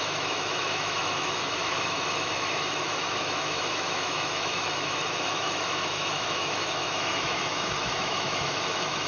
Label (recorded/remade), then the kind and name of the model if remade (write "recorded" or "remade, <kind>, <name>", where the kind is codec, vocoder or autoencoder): remade, autoencoder, DAC-VAE